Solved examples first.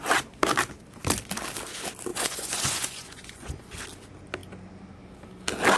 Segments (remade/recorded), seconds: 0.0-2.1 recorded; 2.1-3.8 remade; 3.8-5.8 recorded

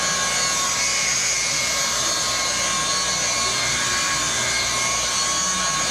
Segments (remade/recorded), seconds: 0.0-1.0 recorded; 1.0-1.8 remade; 1.8-5.9 recorded

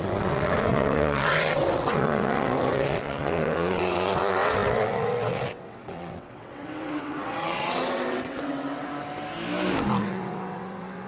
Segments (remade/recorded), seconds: 0.0-8.9 remade; 8.9-10.0 recorded; 10.0-11.1 remade